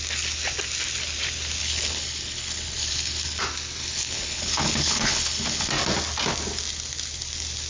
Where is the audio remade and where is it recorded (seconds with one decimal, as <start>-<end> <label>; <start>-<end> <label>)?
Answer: 0.0-1.6 recorded; 1.6-3.4 remade; 3.4-3.8 recorded; 3.8-5.7 remade; 5.7-7.7 recorded